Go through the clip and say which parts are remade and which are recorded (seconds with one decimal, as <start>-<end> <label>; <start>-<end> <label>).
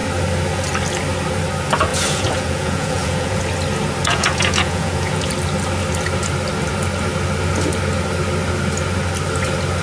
0.0-1.9 recorded; 1.9-3.4 remade; 3.4-4.0 recorded; 4.0-5.3 remade; 5.3-9.8 recorded